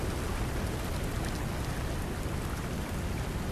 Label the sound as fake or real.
real